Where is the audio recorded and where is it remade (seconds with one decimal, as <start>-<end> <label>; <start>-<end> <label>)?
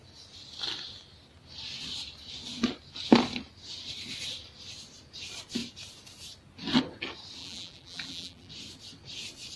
0.0-7.4 recorded; 7.4-8.5 remade; 8.5-9.6 recorded